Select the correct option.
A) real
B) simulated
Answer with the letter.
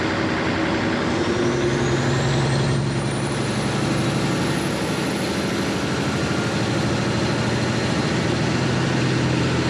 A